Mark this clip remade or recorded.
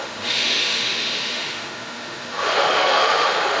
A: remade